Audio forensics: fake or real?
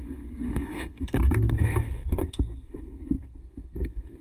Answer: fake